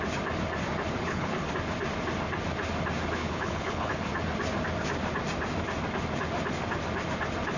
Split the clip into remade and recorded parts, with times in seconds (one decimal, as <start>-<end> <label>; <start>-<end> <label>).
0.0-1.0 recorded; 1.0-1.5 remade; 1.5-3.2 recorded; 3.2-3.9 remade; 3.9-7.6 recorded